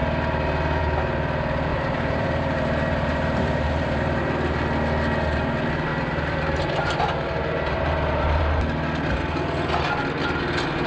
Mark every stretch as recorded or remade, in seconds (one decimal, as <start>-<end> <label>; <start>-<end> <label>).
0.0-1.7 recorded; 1.7-4.2 remade; 4.2-5.9 recorded; 5.9-8.5 remade; 8.5-10.9 recorded